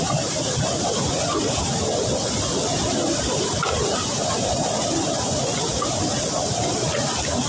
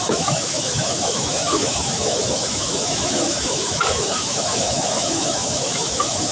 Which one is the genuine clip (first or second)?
first